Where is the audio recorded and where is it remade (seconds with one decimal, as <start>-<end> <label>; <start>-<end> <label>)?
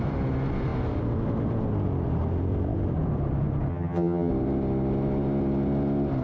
0.0-3.7 recorded; 3.7-4.3 remade; 4.3-6.2 recorded